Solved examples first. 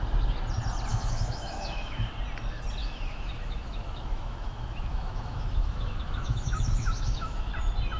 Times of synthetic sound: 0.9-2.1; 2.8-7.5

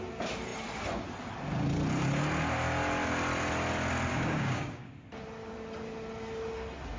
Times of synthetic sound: 4.1-4.9